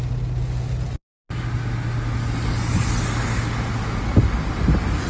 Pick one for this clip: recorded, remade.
recorded